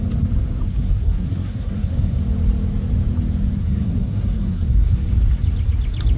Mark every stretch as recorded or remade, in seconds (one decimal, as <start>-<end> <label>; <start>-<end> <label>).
0.0-0.7 recorded; 0.7-2.2 remade; 2.2-3.6 recorded; 3.6-4.9 remade; 4.9-6.2 recorded